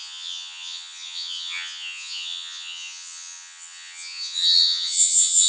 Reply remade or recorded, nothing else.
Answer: remade